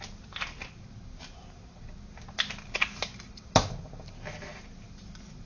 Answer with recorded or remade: recorded